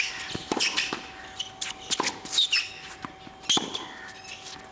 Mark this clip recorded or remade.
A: recorded